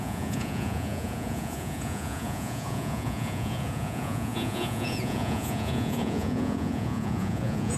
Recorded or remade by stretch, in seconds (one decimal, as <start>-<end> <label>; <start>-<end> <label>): 0.0-7.8 remade